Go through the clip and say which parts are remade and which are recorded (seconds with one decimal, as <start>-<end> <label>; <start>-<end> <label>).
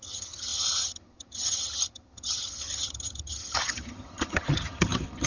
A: 0.0-5.3 remade